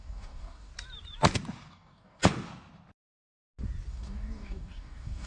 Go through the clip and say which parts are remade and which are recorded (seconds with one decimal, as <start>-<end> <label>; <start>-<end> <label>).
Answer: 0.0-0.7 remade; 0.7-1.7 recorded; 1.7-2.2 remade; 2.2-3.9 recorded; 3.9-5.3 remade